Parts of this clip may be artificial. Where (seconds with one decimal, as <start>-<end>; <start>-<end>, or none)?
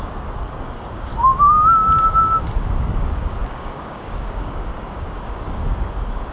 0.0-1.1; 2.8-6.3